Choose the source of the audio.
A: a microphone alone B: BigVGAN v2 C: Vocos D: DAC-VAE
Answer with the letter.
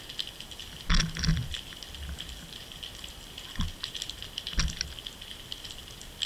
A